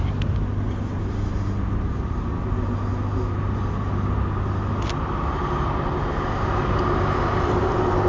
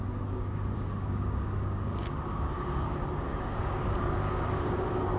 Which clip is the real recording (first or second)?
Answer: first